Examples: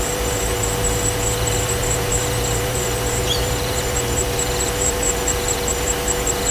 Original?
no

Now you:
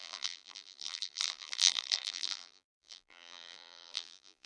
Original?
no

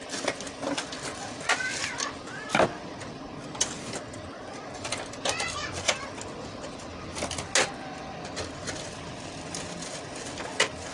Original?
yes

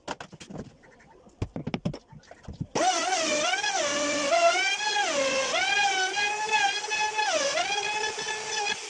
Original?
yes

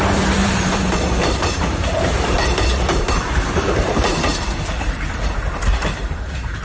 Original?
no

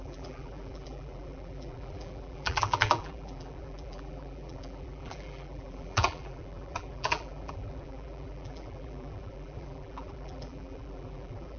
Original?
no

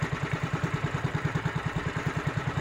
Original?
no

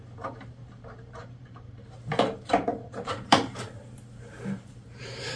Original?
no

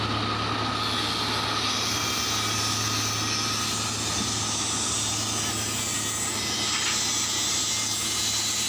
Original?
yes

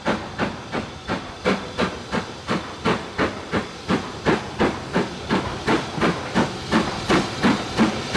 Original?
yes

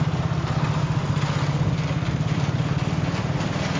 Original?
yes